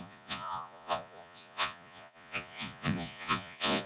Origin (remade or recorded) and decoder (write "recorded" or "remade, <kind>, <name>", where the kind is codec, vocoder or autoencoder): remade, vocoder, Vocos